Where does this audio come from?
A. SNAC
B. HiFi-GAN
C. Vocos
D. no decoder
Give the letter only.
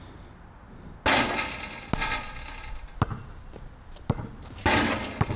D